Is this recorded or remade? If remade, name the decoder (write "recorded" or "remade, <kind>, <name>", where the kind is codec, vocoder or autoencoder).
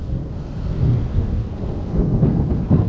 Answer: remade, codec, SNAC